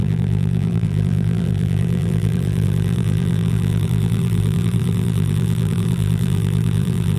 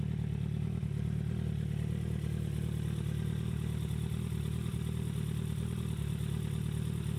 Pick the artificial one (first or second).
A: first